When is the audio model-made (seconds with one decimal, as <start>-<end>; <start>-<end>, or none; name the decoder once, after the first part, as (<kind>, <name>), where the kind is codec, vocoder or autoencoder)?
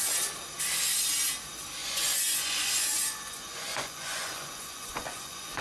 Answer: 1.8-5.6 (vocoder, Vocos)